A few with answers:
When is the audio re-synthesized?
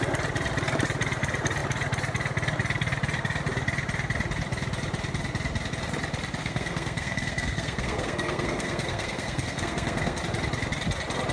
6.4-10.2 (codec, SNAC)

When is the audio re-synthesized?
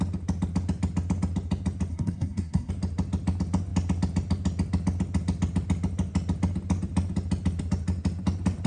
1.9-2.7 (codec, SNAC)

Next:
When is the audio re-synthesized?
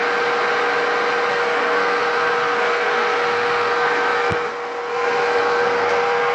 1.3-6.3 (codec, SNAC)